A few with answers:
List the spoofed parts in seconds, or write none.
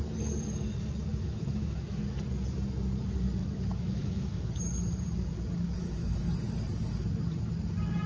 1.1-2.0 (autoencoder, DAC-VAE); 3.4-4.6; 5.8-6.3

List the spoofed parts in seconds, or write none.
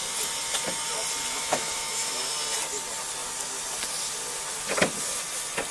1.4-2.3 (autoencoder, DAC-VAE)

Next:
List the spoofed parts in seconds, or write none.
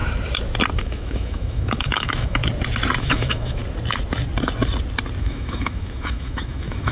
0.8-2.4 (autoencoder, DAC-VAE); 3.0-3.6; 5.2-6.9